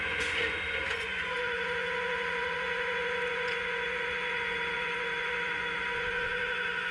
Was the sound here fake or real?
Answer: fake